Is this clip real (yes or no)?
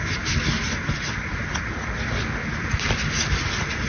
yes